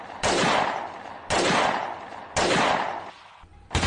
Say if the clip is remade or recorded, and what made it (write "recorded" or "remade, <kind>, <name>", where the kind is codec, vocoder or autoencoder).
recorded